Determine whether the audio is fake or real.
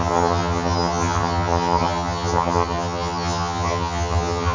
fake